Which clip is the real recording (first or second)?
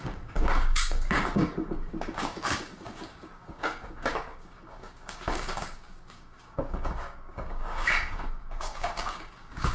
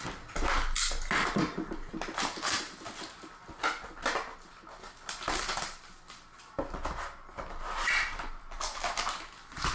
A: second